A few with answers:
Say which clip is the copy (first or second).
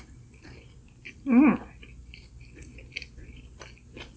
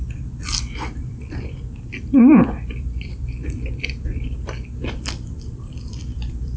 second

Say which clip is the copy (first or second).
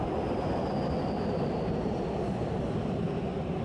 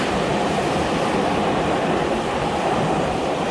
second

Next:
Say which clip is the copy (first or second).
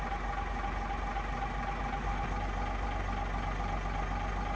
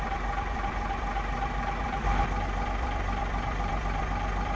second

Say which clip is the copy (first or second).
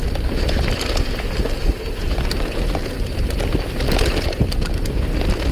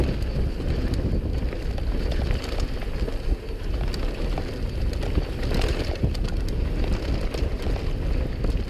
first